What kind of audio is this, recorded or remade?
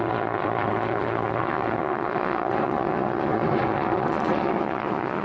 remade